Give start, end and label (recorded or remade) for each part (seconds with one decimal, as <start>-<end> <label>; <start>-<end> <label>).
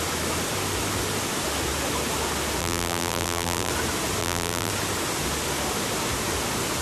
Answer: 0.0-2.6 recorded; 2.6-3.7 remade; 3.7-4.2 recorded; 4.2-4.7 remade; 4.7-6.8 recorded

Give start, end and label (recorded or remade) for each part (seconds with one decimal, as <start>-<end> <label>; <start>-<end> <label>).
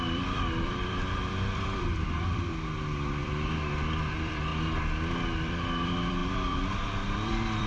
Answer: 0.0-2.5 remade; 2.5-3.2 recorded; 3.2-4.5 remade; 4.5-5.1 recorded; 5.1-7.7 remade